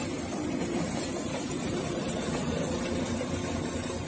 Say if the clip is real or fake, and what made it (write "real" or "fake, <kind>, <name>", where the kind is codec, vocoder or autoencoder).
real